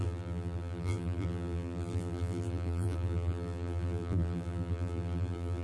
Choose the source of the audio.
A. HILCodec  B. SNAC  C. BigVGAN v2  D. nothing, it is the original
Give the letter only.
C